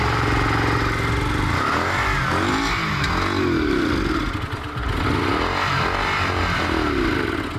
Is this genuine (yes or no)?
yes